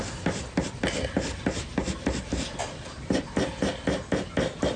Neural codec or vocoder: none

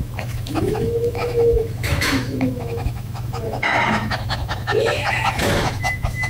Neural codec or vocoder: autoencoder, DAC-VAE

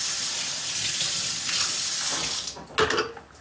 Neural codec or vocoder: none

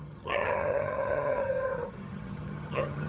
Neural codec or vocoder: vocoder, HiFi-GAN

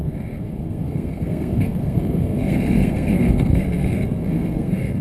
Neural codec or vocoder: codec, SNAC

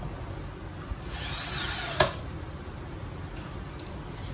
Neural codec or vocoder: none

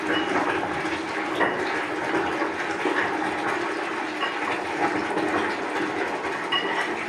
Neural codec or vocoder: none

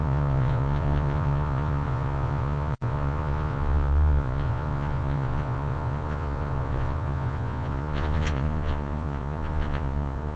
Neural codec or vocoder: vocoder, Vocos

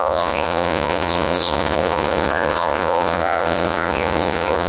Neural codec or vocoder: vocoder, Vocos